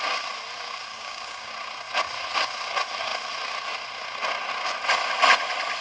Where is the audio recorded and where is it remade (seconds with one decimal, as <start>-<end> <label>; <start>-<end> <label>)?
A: 0.0-0.9 recorded; 0.9-1.5 remade; 1.5-5.8 recorded